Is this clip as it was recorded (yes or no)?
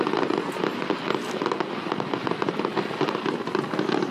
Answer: yes